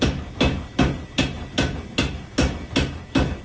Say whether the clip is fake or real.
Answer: real